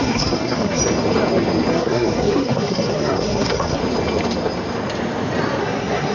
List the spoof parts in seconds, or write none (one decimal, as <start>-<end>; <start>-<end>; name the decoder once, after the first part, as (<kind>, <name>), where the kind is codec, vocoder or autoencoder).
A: 0.0-0.8 (codec, SNAC); 1.7-3.8; 5.6-6.1